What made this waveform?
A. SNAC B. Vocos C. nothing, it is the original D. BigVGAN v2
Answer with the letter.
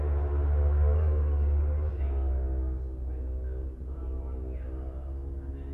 C